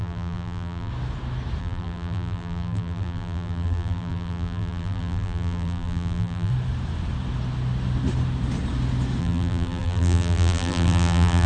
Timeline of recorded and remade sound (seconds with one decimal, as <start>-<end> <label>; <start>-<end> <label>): 0.0-0.9 remade; 0.9-1.6 recorded; 1.6-6.5 remade; 6.5-9.2 recorded; 9.2-11.5 remade